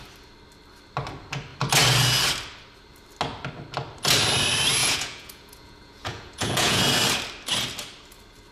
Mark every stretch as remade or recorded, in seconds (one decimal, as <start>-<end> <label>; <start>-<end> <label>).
0.0-4.8 recorded; 4.8-6.8 remade; 6.8-8.5 recorded